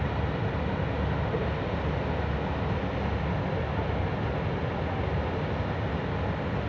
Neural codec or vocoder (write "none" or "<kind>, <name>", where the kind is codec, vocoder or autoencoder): none